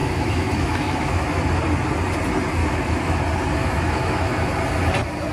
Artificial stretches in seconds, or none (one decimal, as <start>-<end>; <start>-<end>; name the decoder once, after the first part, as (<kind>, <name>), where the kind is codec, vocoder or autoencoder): 0.0-1.5 (autoencoder, DAC-VAE); 2.6-3.2; 3.6-4.5